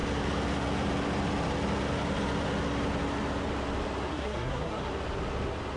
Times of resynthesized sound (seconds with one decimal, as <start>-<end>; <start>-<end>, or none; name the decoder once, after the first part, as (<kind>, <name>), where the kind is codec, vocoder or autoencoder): 4.1-4.9 (codec, SNAC)